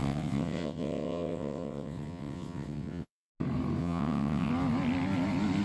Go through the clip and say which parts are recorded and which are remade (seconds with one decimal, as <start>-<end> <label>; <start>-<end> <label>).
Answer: 0.0-3.3 remade; 3.3-3.8 recorded; 3.8-4.5 remade; 4.5-5.6 recorded